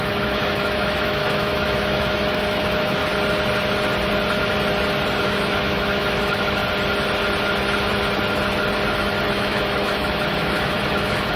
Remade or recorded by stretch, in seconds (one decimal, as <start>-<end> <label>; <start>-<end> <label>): 0.0-3.0 remade; 3.0-5.2 recorded; 5.2-6.6 remade; 6.6-9.3 recorded; 9.3-11.4 remade